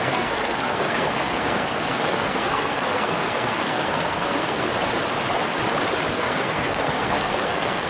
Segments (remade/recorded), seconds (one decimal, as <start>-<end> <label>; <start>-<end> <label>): 0.0-4.7 remade; 4.7-6.1 recorded; 6.1-7.9 remade